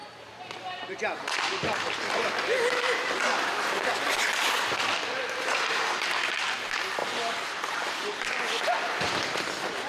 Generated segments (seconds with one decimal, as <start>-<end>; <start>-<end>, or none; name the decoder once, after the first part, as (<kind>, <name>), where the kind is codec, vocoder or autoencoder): 0.0-3.2 (vocoder, BigVGAN v2); 7.0-7.6